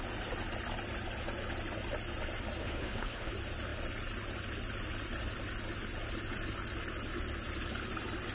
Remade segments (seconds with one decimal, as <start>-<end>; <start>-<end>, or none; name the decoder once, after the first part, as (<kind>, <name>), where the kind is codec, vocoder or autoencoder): 2.6-3.3 (codec, HILCodec)